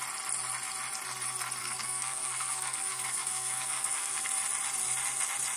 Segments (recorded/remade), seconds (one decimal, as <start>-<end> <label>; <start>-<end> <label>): 0.0-1.6 recorded; 1.6-4.3 remade; 4.3-5.6 recorded